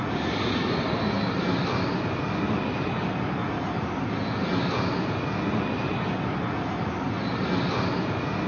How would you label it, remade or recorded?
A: recorded